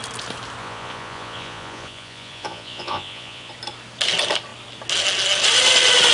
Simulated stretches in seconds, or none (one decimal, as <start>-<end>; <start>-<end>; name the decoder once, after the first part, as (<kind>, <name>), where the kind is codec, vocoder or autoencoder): 0.6-3.5 (vocoder, Vocos)